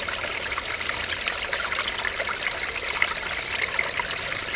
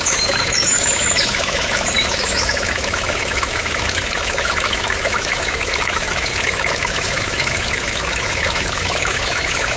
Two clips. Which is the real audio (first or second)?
first